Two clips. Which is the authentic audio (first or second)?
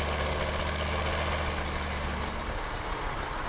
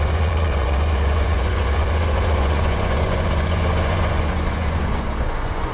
first